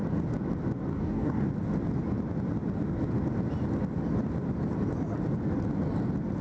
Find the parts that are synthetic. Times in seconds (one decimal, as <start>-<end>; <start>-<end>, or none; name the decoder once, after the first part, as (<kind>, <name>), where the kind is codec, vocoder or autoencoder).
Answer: 0.9-1.5 (codec, DAC)